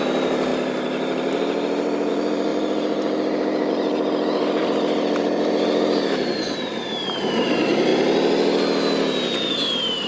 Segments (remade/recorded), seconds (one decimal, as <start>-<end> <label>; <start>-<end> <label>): 0.0-7.9 remade; 7.9-9.5 recorded; 9.5-10.1 remade

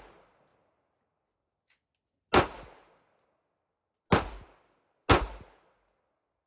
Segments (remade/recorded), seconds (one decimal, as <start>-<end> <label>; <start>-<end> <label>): 0.0-6.5 recorded

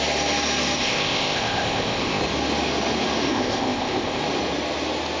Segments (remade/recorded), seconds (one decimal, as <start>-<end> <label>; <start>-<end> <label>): 0.0-0.8 recorded; 0.8-2.2 remade; 2.2-3.3 recorded; 3.3-4.2 remade; 4.2-5.2 recorded